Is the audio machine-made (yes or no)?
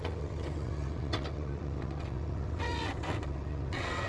yes